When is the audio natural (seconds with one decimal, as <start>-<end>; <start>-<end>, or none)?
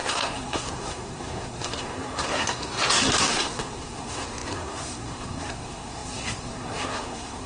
2.7-3.2